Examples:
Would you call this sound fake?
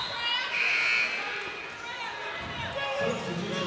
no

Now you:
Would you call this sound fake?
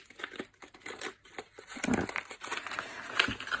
no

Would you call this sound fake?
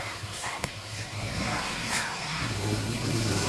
yes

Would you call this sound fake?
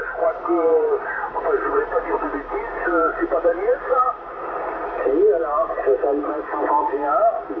no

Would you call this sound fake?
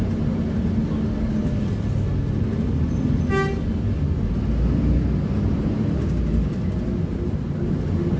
no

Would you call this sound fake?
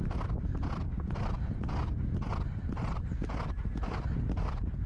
no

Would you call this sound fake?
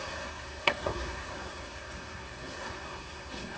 yes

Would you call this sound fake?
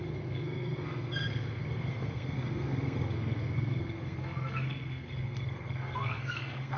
yes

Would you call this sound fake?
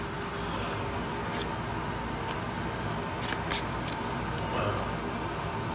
no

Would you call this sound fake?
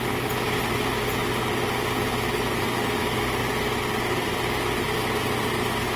no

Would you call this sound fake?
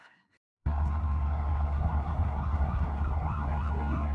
yes